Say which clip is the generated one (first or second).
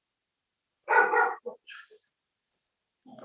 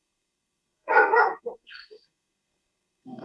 second